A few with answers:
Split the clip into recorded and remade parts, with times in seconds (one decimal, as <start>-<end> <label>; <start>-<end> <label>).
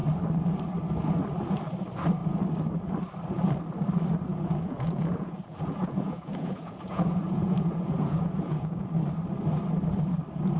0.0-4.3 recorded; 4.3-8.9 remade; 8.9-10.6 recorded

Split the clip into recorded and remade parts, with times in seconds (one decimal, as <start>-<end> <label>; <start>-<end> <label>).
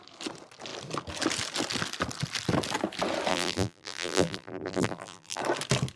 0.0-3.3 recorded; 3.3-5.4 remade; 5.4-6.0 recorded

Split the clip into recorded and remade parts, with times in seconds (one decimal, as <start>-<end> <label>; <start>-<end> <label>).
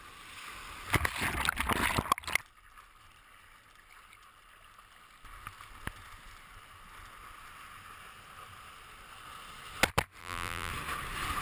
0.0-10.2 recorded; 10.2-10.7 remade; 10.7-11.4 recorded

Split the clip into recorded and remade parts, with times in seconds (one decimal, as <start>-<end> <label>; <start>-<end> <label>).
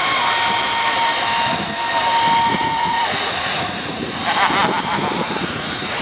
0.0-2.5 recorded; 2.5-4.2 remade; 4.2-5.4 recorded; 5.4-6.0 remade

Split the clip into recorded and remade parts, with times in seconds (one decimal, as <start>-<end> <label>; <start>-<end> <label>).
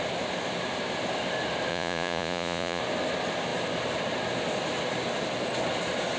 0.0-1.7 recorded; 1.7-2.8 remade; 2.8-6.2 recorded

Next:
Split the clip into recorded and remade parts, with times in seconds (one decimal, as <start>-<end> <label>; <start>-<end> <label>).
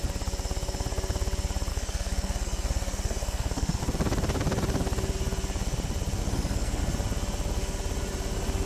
0.0-1.7 recorded; 1.7-3.8 remade; 3.8-6.2 recorded; 6.2-6.8 remade; 6.8-8.7 recorded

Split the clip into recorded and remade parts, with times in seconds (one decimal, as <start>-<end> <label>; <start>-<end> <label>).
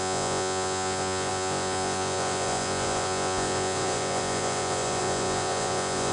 0.0-6.1 remade